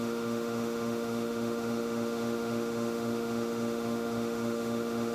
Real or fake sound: fake